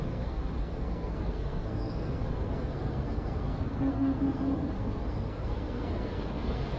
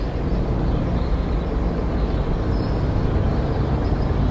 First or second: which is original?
second